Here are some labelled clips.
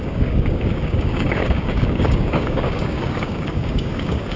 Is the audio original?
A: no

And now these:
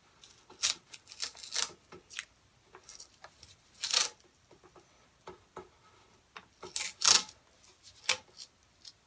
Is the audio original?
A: yes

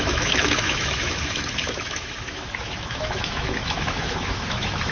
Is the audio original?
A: no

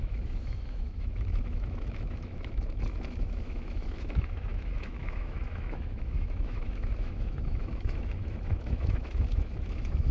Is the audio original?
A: no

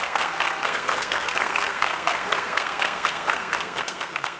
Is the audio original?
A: no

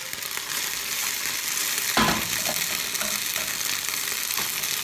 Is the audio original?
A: yes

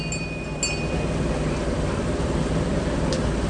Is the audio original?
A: yes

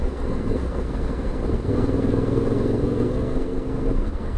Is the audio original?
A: no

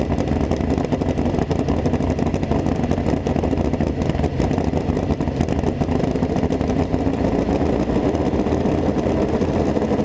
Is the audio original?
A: yes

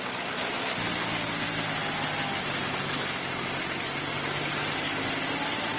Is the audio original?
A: yes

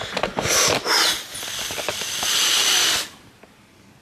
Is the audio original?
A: yes